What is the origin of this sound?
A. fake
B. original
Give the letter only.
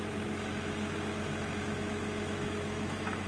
A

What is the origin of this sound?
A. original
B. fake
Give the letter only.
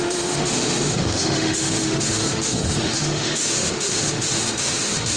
B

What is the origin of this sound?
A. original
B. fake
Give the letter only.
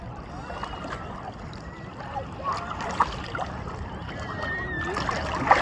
A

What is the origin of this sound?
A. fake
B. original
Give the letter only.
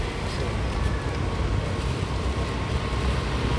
B